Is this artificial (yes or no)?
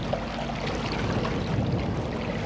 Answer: no